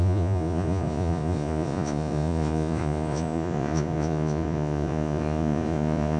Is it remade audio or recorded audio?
remade